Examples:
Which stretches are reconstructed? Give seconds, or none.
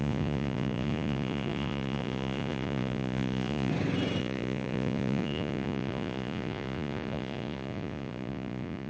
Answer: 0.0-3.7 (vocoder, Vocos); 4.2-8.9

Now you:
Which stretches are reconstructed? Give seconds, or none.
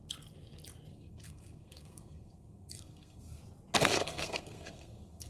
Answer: 0.9-3.4 (codec, SNAC); 3.8-5.3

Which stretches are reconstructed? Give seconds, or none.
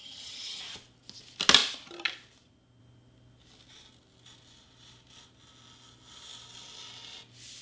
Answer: 0.0-0.6 (vocoder, HiFi-GAN)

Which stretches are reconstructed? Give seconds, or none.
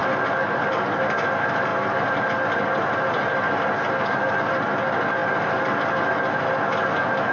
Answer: 1.7-4.3 (vocoder, BigVGAN v2); 5.2-6.2